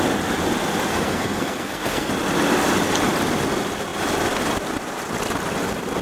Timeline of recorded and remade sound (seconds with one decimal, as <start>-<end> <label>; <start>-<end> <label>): 0.0-0.9 recorded; 0.9-2.1 remade; 2.1-6.0 recorded